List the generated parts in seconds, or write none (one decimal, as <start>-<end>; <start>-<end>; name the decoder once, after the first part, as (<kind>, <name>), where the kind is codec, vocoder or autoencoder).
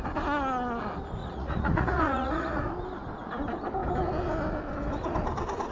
1.2-2.6 (vocoder, Vocos)